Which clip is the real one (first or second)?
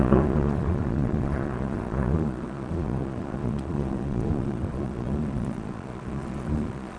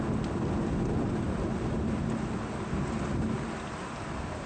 second